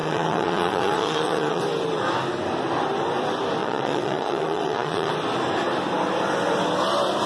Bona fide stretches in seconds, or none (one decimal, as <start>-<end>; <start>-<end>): 1.6-3.6; 5.1-7.3